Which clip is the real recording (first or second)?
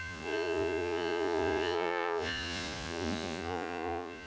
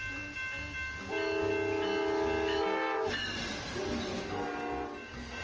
second